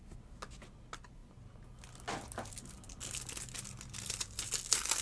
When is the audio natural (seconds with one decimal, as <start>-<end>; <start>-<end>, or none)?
0.0-5.0